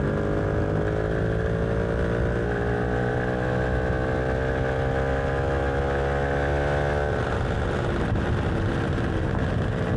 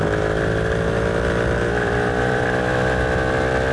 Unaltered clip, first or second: first